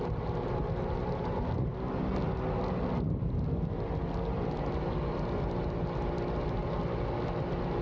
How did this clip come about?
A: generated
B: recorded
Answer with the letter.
B